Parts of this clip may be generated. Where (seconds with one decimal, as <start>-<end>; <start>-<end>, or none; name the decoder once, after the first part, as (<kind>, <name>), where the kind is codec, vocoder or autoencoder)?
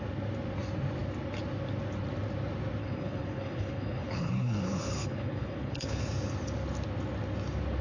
2.8-6.0 (codec, HILCodec)